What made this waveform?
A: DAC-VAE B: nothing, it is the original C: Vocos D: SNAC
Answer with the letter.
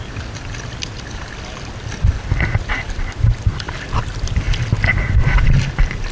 B